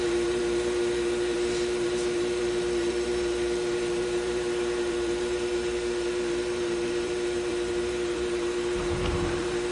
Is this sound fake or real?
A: fake